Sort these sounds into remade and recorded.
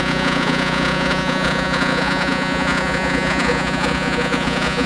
remade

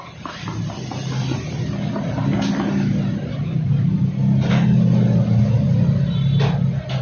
recorded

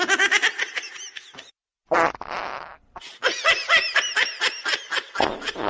recorded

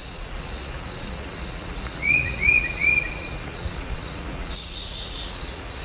remade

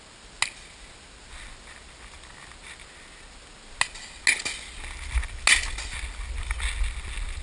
recorded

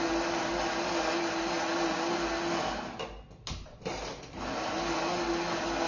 recorded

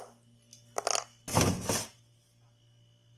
recorded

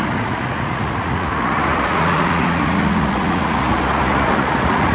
remade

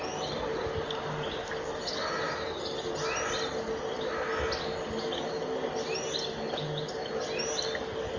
recorded